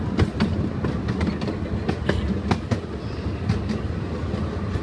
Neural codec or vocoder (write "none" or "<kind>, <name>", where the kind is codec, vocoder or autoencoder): none